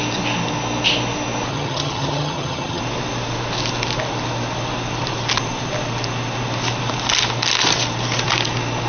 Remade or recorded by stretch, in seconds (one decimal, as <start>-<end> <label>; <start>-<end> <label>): 0.0-1.5 recorded; 1.5-2.8 remade; 2.8-8.9 recorded

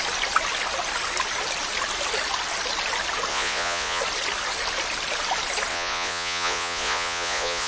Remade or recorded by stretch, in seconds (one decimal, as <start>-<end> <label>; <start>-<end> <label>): 0.0-3.3 recorded; 3.3-4.0 remade; 4.0-5.7 recorded; 5.7-7.7 remade

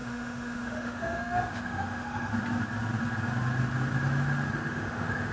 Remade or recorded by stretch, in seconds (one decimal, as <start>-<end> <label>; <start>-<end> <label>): 0.0-2.3 remade; 2.3-4.5 recorded; 4.5-5.3 remade

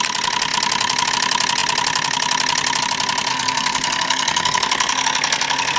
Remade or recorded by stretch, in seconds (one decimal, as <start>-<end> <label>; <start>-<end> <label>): 0.0-3.3 recorded; 3.3-5.8 remade

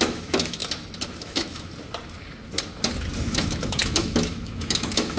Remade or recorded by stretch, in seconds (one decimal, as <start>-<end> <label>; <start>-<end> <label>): 0.0-0.6 remade; 0.6-1.2 recorded; 1.2-1.7 remade; 1.7-3.3 recorded; 3.3-5.2 remade